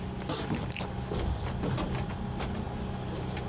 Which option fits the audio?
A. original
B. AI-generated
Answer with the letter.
A